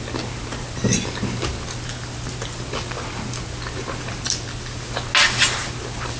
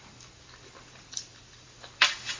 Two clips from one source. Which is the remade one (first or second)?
second